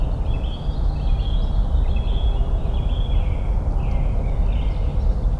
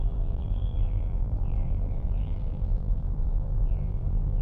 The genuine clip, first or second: first